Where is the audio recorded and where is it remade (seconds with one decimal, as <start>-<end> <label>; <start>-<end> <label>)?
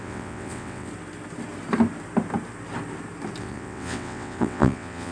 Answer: 0.0-0.9 remade; 0.9-3.4 recorded; 3.4-5.1 remade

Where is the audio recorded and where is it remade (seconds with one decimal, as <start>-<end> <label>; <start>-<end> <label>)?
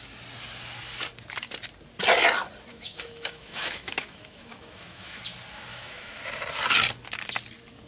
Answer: 0.0-2.7 recorded; 2.7-5.2 remade; 5.2-5.7 recorded; 5.7-6.2 remade; 6.2-7.9 recorded